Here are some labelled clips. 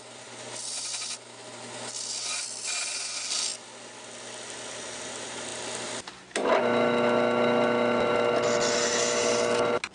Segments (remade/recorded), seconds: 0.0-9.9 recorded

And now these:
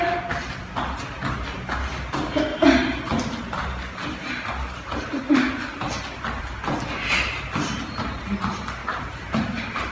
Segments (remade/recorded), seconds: 0.0-8.8 recorded; 8.8-9.5 remade; 9.5-9.9 recorded

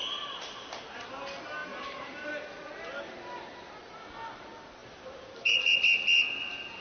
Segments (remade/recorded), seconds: 0.0-1.1 remade; 1.1-1.6 recorded; 1.6-2.3 remade; 2.3-4.8 recorded; 4.8-5.8 remade; 5.8-6.8 recorded

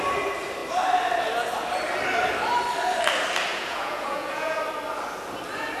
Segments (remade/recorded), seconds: 0.0-3.5 recorded; 3.5-4.6 remade; 4.6-5.8 recorded

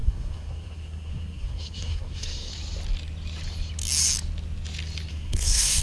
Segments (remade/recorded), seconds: 0.0-2.5 remade; 2.5-5.1 recorded; 5.1-5.8 remade